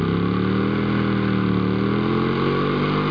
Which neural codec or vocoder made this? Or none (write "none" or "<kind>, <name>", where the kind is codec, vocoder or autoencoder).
none